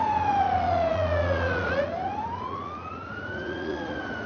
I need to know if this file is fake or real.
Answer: fake